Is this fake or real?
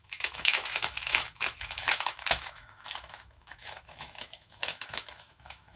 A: fake